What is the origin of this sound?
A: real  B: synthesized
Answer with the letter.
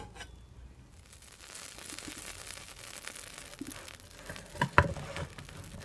A